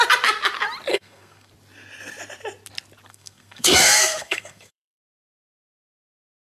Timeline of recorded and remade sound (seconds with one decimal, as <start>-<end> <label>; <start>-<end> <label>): 0.0-0.9 recorded; 0.9-1.5 remade; 1.5-3.1 recorded; 3.1-5.0 remade; 5.0-6.4 recorded